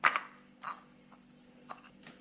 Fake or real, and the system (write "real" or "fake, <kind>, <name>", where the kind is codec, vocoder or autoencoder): real